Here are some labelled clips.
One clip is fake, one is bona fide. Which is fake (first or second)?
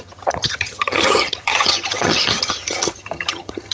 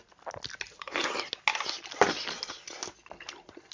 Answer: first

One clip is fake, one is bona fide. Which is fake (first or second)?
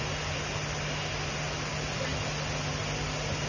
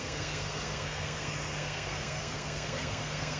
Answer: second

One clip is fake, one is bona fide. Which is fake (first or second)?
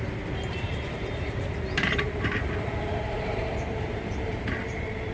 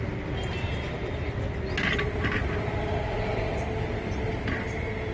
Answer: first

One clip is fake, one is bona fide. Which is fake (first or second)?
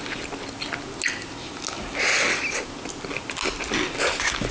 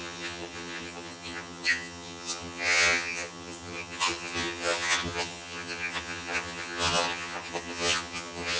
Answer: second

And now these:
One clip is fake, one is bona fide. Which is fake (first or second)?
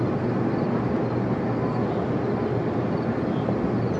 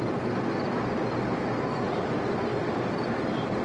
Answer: second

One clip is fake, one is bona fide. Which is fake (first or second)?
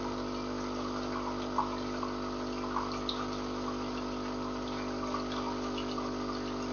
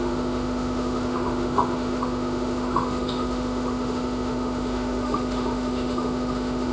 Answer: second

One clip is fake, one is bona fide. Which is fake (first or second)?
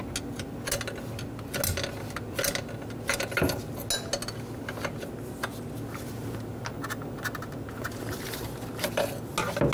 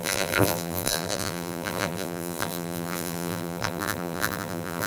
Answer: second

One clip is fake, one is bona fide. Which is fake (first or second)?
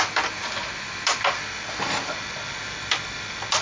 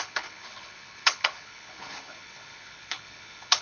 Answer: second